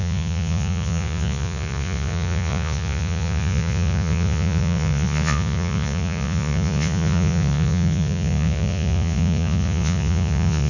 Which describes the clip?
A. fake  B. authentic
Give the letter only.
A